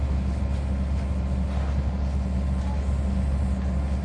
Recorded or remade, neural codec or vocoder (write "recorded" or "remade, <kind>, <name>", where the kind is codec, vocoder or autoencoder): recorded